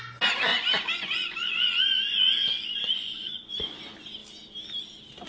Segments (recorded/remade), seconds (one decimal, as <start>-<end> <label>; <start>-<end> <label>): 0.0-0.5 recorded; 0.5-3.7 remade; 3.7-5.3 recorded